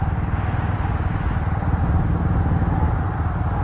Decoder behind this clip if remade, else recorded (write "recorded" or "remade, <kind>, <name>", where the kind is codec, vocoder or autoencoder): recorded